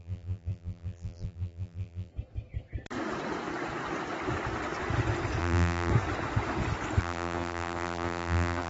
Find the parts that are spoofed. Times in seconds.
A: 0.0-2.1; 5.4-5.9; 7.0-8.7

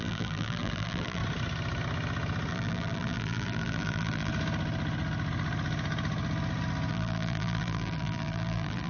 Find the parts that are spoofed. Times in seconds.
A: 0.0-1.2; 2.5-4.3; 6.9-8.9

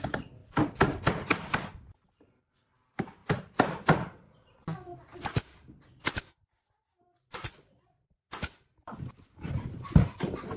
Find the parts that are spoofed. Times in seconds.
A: 7.4-8.3